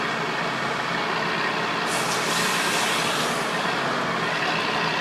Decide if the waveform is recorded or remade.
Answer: recorded